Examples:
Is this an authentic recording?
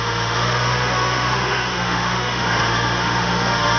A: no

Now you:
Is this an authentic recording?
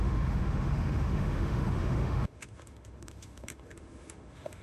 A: no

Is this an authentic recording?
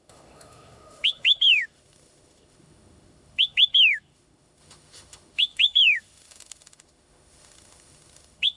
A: no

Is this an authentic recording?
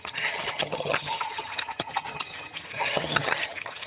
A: no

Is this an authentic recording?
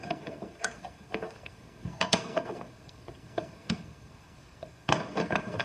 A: no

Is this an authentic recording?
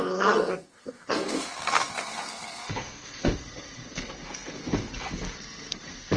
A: no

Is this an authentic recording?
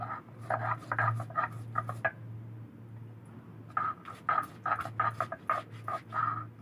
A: yes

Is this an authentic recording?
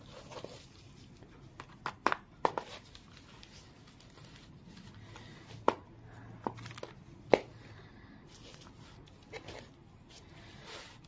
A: yes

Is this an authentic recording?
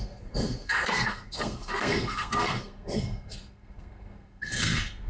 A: no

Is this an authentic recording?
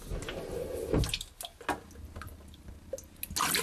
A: yes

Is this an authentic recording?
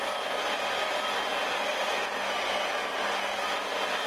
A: yes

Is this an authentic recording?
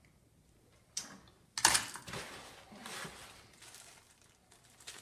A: yes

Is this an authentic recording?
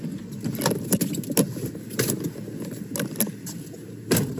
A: yes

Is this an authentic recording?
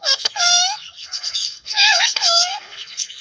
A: no